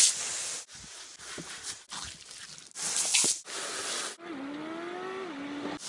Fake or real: real